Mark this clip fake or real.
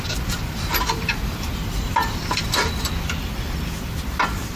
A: fake